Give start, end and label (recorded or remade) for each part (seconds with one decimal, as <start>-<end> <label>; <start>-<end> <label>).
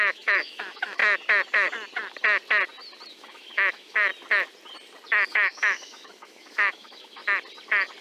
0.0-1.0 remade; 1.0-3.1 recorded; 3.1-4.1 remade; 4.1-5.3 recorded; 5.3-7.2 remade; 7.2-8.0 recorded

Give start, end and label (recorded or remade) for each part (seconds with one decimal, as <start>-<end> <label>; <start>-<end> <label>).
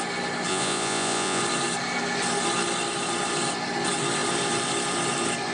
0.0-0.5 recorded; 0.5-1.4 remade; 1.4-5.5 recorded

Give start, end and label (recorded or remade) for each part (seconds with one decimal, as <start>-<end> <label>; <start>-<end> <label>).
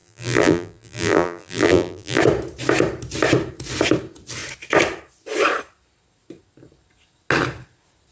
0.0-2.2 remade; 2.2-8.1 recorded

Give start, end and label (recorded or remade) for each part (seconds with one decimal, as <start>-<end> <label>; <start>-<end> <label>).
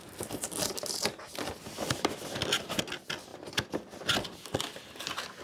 0.0-2.8 remade; 2.8-5.4 recorded